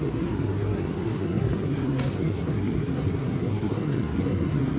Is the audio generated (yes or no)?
yes